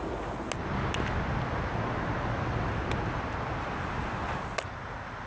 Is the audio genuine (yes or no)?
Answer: yes